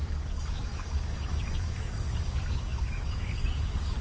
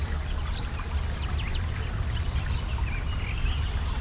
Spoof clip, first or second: first